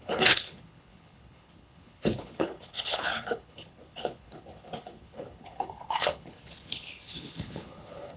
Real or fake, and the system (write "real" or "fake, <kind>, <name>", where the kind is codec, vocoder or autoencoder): fake, codec, HILCodec